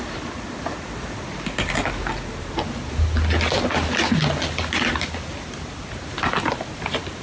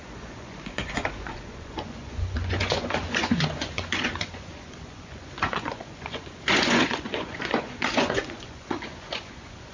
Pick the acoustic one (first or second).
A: first